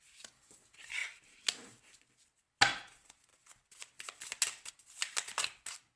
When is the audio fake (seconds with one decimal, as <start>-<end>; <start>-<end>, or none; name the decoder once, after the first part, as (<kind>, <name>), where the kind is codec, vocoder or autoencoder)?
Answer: none

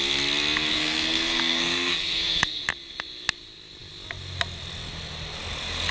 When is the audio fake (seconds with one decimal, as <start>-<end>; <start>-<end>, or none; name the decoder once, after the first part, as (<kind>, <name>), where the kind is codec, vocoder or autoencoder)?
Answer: 0.7-2.6 (codec, SNAC)

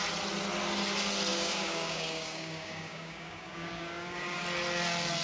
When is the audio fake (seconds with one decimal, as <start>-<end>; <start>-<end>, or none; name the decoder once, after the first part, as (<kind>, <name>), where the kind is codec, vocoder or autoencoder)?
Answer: 1.3-4.4 (codec, DAC)

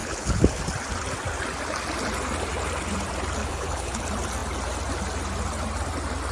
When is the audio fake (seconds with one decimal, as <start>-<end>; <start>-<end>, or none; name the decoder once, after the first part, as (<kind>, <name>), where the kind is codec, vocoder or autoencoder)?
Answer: 0.0-0.6 (codec, HILCodec); 3.4-4.0

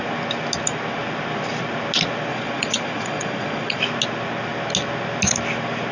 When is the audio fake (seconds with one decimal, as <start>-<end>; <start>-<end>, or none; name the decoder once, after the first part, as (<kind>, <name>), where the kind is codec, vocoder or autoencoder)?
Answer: 2.3-3.8 (vocoder, Vocos)